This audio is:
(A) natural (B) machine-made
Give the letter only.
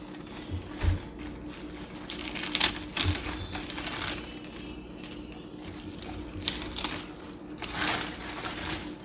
A